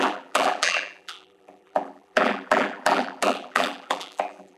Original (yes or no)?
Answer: no